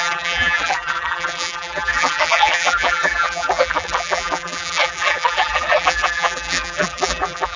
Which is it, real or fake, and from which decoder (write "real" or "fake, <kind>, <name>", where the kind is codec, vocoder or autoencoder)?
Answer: fake, vocoder, BigVGAN v2